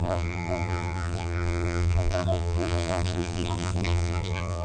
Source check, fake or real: fake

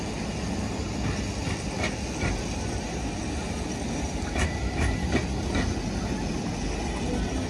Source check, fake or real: real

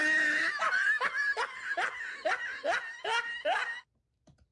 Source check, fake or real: real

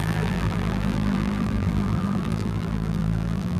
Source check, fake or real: fake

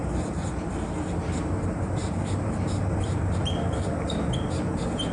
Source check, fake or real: fake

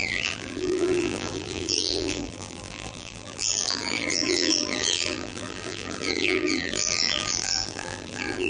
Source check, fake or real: fake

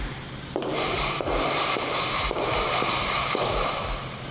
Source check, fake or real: fake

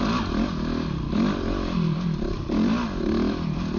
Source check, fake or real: real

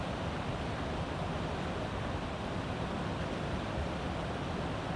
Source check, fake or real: fake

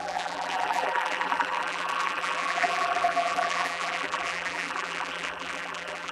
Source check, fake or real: fake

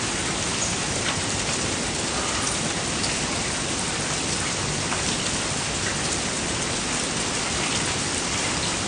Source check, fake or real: fake